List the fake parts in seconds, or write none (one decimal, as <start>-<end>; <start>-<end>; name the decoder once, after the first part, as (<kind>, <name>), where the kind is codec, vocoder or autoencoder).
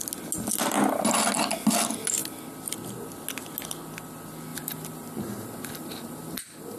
4.5-6.8 (vocoder, BigVGAN v2)